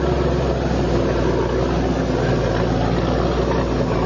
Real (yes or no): yes